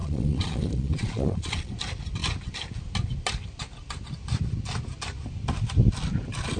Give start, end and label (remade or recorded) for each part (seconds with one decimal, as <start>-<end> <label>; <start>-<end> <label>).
0.0-1.7 remade; 1.7-6.6 recorded